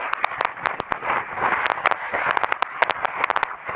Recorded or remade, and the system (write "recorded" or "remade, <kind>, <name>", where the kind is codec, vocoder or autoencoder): recorded